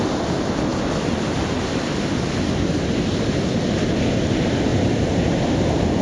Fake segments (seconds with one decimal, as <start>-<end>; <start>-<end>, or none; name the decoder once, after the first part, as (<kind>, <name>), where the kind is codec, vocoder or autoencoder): none